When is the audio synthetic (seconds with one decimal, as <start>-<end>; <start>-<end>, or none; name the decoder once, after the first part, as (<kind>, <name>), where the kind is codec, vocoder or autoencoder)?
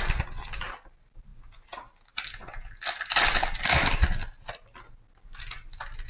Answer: none